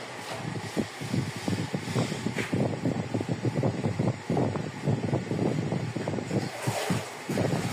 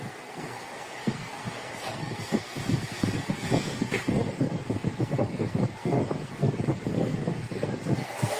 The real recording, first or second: first